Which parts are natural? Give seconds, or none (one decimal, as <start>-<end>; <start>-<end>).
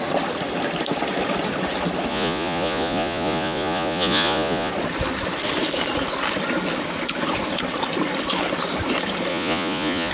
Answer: 0.0-2.1; 4.7-9.3